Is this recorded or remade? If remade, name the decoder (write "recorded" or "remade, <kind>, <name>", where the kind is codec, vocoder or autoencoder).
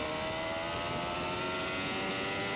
recorded